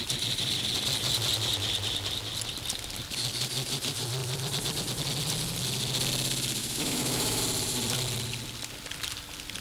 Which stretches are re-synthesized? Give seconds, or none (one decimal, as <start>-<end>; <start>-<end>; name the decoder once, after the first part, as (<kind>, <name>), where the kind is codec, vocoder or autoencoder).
6.6-7.4 (autoencoder, DAC-VAE)